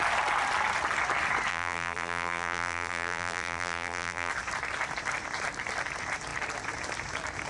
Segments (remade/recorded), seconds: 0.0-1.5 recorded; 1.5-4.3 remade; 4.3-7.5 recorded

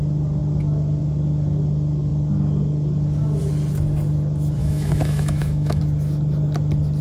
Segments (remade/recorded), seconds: 0.0-4.6 recorded; 4.6-5.8 remade; 5.8-7.0 recorded

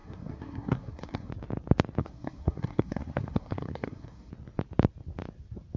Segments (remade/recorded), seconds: 0.0-1.3 remade; 1.3-2.0 recorded; 2.0-4.3 remade; 4.3-5.8 recorded

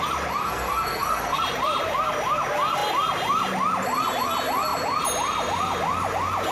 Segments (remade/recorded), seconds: 0.0-0.4 recorded; 0.4-1.4 remade; 1.4-6.5 recorded

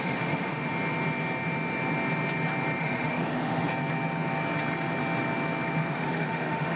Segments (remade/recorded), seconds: 0.0-0.7 remade; 0.7-2.8 recorded; 2.8-3.7 remade; 3.7-5.9 recorded; 5.9-6.8 remade

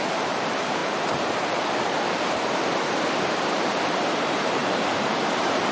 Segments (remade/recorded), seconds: 0.0-4.6 remade; 4.6-5.7 recorded